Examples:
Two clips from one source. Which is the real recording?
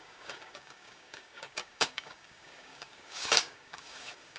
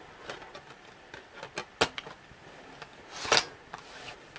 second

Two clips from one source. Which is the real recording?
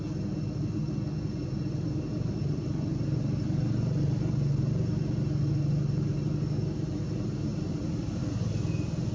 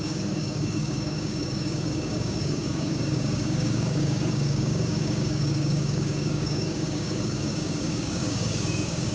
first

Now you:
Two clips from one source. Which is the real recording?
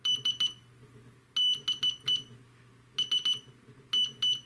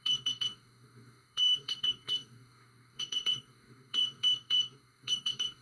first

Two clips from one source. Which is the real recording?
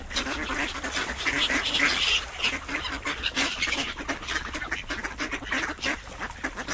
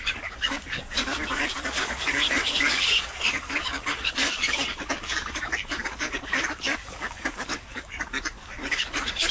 first